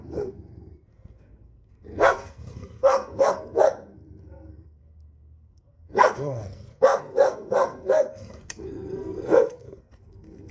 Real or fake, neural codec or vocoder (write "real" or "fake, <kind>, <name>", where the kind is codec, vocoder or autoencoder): fake, codec, SNAC